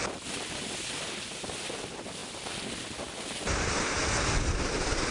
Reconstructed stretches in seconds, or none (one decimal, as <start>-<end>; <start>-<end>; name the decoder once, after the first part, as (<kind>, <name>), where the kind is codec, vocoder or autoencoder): none